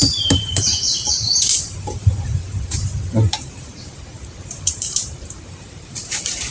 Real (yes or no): no